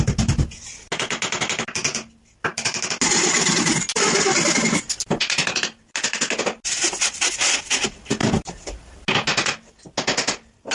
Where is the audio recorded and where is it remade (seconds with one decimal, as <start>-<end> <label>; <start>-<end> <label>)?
0.0-10.7 recorded

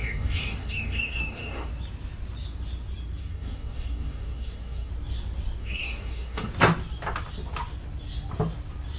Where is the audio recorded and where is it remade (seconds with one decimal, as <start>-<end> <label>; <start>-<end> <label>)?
0.0-1.7 remade; 1.7-3.2 recorded; 3.2-4.9 remade; 4.9-5.6 recorded; 5.6-6.5 remade; 6.5-9.0 recorded

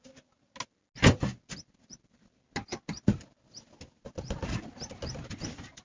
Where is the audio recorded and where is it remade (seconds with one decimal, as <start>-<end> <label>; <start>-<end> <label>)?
0.0-5.8 recorded

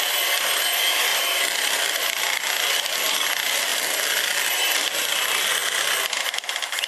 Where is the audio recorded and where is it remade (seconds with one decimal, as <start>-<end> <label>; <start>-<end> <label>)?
0.0-1.1 recorded; 1.1-2.9 remade; 2.9-3.7 recorded; 3.7-4.5 remade; 4.5-6.9 recorded

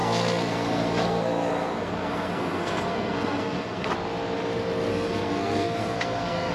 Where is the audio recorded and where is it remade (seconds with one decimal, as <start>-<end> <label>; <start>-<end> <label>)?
0.0-3.9 remade; 3.9-4.9 recorded; 4.9-6.5 remade

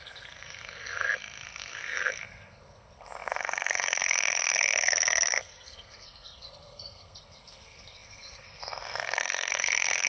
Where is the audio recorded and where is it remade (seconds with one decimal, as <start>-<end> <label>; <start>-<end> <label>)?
0.0-10.1 remade

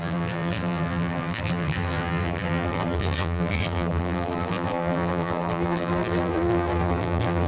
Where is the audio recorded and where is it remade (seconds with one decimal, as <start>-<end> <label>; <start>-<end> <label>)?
0.0-7.5 remade

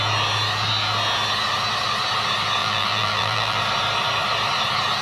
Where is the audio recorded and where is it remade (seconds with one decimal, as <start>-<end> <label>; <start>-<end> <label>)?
0.0-2.6 recorded; 2.6-3.6 remade; 3.6-5.0 recorded